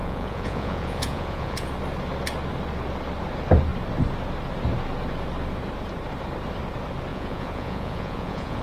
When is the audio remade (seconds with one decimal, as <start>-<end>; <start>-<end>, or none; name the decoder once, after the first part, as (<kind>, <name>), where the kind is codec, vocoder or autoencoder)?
0.0-1.7 (vocoder, Vocos); 7.1-8.6